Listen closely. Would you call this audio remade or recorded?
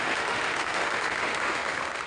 remade